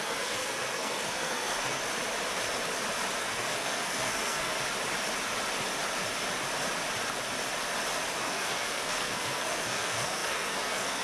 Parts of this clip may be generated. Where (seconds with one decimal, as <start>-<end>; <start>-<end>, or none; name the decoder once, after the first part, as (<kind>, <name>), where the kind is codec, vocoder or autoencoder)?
0.0-1.8 (codec, SNAC); 3.2-4.5; 8.2-11.0